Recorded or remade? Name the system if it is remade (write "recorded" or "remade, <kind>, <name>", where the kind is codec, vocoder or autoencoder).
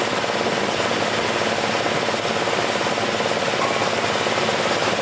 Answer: recorded